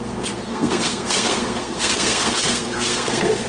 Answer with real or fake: fake